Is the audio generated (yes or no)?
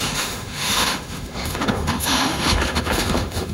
yes